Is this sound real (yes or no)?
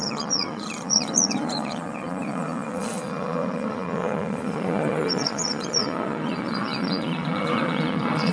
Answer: no